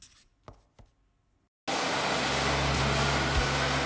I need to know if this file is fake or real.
real